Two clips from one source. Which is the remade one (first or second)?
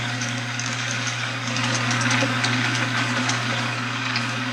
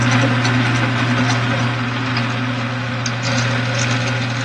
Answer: first